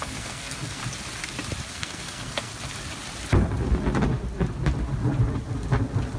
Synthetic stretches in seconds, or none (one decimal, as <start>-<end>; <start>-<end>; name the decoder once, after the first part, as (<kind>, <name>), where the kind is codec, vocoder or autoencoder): 0.0-0.8 (codec, SNAC); 1.7-2.5